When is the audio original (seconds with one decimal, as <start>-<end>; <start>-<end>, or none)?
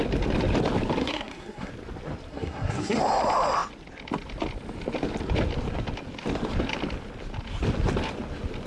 0.0-1.0; 1.7-2.3; 3.0-8.7